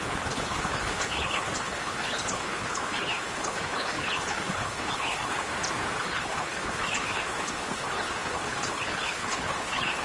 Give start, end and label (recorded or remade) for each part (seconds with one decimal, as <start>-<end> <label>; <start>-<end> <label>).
0.0-5.5 remade; 5.5-6.0 recorded; 6.0-10.0 remade